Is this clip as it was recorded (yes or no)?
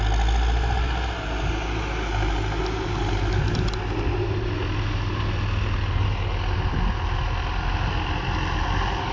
yes